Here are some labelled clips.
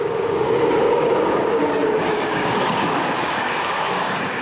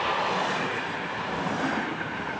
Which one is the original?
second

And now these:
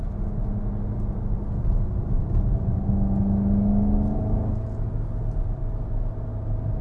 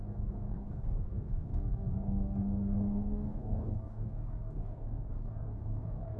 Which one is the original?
first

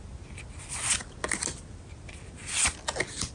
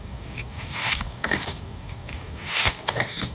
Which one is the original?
first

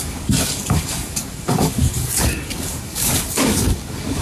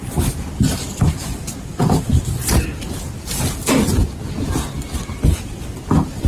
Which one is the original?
second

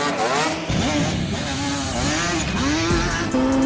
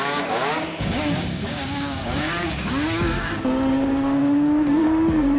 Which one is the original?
first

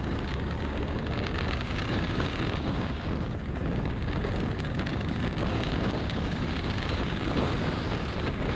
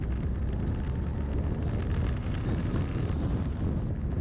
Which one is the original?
second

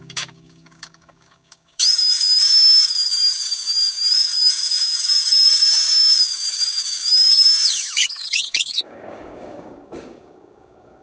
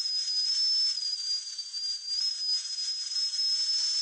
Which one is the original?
second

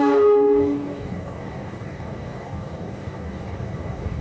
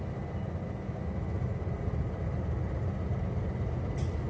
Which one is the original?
second